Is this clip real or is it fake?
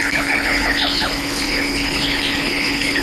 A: fake